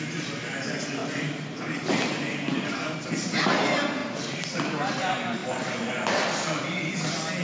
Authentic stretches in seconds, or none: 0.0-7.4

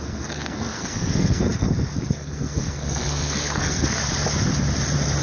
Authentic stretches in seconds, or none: 4.0-5.2